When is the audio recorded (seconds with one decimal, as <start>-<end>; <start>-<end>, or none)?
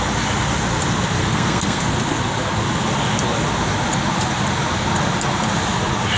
0.0-1.2; 1.8-6.2